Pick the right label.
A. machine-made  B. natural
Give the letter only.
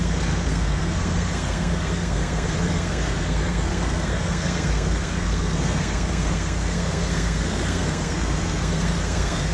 A